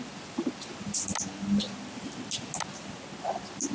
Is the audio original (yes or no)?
yes